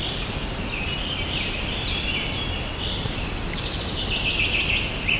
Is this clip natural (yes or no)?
yes